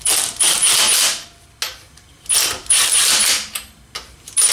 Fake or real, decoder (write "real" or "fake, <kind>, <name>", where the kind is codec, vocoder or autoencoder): real